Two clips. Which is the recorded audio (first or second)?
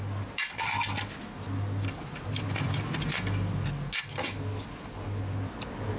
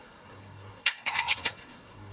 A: first